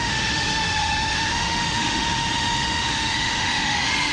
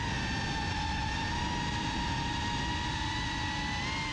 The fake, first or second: first